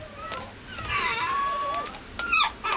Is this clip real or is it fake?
real